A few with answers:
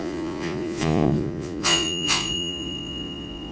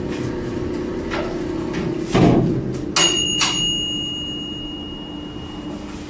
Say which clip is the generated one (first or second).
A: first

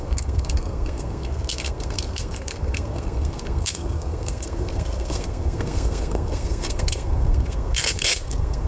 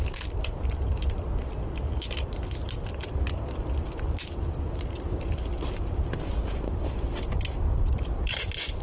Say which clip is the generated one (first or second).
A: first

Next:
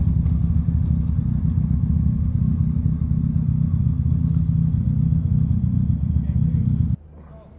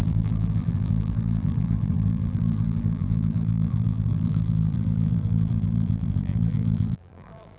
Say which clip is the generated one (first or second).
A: second